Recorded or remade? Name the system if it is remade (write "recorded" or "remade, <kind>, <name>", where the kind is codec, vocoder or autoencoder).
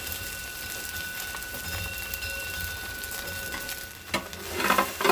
recorded